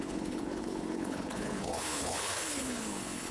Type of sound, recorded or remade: remade